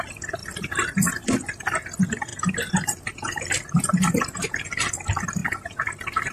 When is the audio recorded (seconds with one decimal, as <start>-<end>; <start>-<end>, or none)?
0.0-0.4; 1.8-2.3; 3.4-6.3

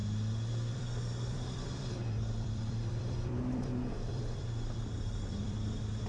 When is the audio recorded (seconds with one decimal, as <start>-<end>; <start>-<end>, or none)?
0.0-0.7